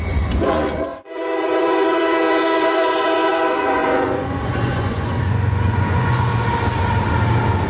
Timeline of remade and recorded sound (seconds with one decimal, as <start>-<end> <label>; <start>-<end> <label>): 0.0-6.3 remade; 6.3-7.7 recorded

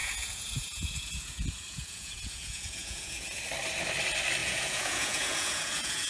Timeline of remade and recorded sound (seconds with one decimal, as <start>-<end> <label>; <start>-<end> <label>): 0.0-3.4 remade; 3.4-4.4 recorded; 4.4-6.1 remade

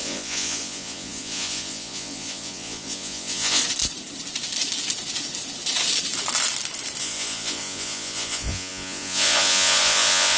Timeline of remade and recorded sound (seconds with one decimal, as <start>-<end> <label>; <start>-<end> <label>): 0.0-3.6 remade; 3.6-7.0 recorded; 7.0-10.4 remade

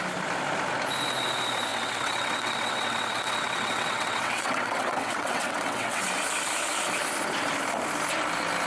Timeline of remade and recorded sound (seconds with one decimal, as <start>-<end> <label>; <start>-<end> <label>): 0.0-1.7 recorded; 1.7-6.0 remade; 6.0-8.7 recorded

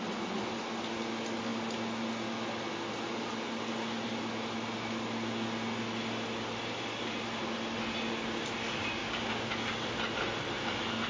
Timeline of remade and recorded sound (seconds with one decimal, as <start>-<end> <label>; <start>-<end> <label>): 0.0-9.0 recorded; 9.0-9.5 remade; 9.5-11.1 recorded

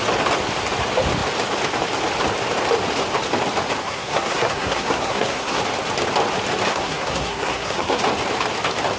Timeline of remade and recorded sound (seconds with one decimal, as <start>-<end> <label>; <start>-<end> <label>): 0.0-3.8 recorded; 3.8-5.6 remade; 5.6-6.7 recorded; 6.7-8.0 remade; 8.0-9.0 recorded

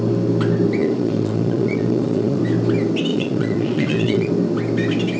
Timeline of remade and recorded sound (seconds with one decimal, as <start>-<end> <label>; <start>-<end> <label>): 0.0-0.8 recorded; 0.8-2.4 remade; 2.4-3.1 recorded; 3.1-4.3 remade; 4.3-5.2 recorded

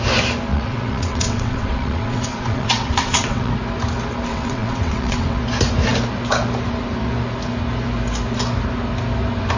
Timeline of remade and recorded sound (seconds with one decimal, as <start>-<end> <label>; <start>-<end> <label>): 0.0-0.5 recorded; 0.5-3.5 remade; 3.5-4.3 recorded; 4.3-5.4 remade; 5.4-9.6 recorded